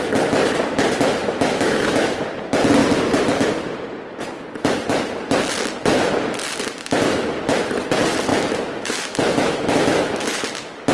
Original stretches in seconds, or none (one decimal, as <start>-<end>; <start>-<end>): 0.0-1.2; 2.2-8.3; 10.5-10.9